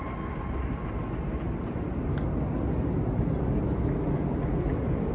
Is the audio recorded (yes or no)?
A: yes